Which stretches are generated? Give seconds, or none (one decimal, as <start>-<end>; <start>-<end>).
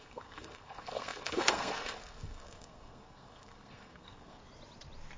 0.0-4.4